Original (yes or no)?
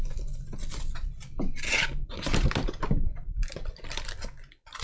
no